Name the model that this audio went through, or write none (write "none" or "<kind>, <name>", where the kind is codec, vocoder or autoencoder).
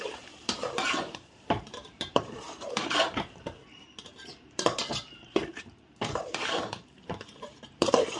vocoder, BigVGAN v2